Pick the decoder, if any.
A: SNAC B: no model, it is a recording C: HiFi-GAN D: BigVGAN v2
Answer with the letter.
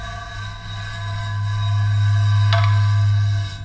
B